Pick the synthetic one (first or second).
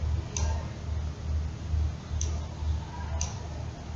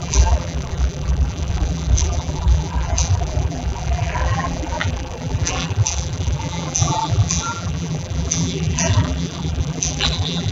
second